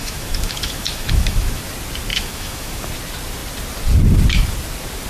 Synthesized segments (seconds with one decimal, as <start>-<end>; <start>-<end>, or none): 0.0-1.6; 2.1-2.9